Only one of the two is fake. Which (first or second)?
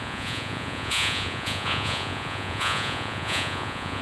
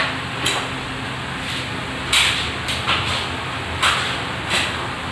first